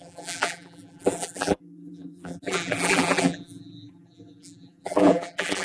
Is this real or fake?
fake